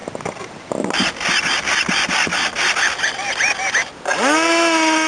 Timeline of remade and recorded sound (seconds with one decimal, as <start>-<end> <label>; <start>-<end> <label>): 0.0-4.5 recorded; 4.5-5.1 remade

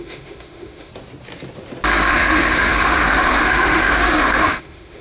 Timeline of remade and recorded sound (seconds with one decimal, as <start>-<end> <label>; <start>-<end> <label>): 0.0-0.9 remade; 0.9-2.1 recorded; 2.1-5.0 remade

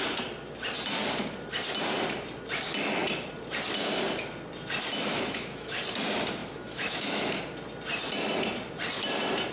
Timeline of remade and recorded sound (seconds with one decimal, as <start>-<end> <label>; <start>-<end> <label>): 0.0-5.1 recorded; 5.1-5.8 remade; 5.8-6.4 recorded; 6.4-7.2 remade; 7.2-9.5 recorded